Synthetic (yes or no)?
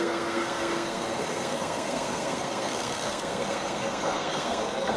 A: yes